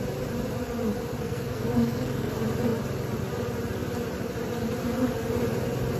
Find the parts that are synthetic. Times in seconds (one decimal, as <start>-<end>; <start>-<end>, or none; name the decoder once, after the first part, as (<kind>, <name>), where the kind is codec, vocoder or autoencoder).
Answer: 1.2-2.3 (codec, SNAC)